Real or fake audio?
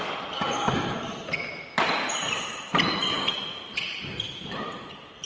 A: real